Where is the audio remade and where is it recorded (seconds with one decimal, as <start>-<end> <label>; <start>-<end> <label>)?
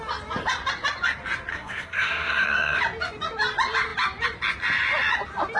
0.0-1.5 recorded; 1.5-2.8 remade; 2.8-5.6 recorded